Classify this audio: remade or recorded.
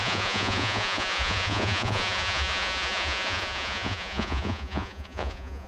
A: remade